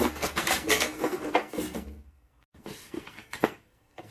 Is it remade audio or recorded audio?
remade